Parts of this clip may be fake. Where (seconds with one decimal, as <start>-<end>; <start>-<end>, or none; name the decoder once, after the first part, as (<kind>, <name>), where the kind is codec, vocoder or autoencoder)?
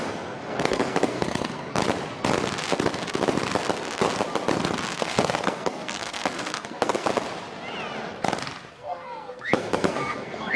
0.0-1.8 (codec, SNAC); 5.0-7.1; 8.7-10.6